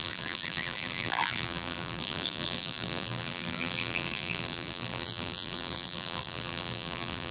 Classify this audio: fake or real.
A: fake